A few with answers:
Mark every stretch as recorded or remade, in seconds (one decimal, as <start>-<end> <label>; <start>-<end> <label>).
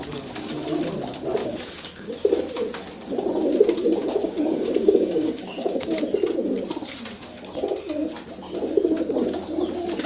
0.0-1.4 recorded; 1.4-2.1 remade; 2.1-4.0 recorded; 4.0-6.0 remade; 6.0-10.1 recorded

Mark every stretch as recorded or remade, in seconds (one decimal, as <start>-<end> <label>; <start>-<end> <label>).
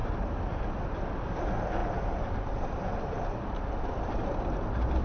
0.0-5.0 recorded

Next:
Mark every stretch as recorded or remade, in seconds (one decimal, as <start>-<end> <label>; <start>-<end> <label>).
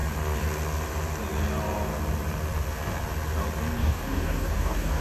0.0-3.8 recorded; 3.8-5.0 remade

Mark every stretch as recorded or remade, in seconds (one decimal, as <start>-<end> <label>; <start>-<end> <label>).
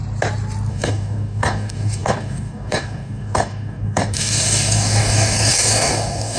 0.0-0.7 recorded; 0.7-6.4 remade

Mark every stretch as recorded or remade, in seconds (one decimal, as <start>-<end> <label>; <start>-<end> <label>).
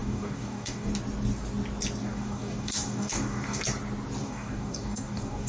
0.0-0.9 remade; 0.9-2.0 recorded; 2.0-3.6 remade; 3.6-4.2 recorded; 4.2-5.5 remade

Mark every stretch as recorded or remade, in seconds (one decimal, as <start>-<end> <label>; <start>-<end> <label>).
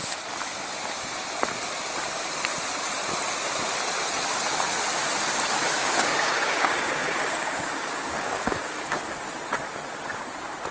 0.0-5.8 recorded; 5.8-9.0 remade; 9.0-10.7 recorded